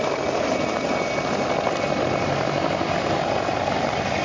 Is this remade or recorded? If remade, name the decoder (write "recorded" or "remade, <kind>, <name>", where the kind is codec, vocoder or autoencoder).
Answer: recorded